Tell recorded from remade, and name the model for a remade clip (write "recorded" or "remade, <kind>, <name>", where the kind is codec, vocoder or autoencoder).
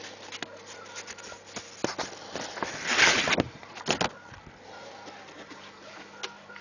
recorded